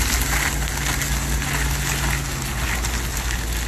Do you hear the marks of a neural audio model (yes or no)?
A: no